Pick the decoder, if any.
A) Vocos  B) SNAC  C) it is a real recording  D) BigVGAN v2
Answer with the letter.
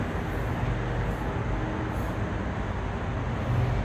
C